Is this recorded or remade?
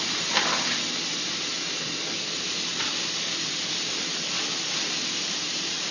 recorded